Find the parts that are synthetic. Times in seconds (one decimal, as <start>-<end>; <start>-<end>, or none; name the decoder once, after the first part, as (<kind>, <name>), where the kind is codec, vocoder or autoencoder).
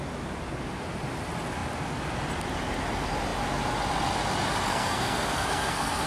4.7-6.1 (codec, SNAC)